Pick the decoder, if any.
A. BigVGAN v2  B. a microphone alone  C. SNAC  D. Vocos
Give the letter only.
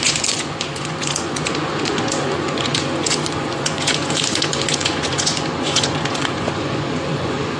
D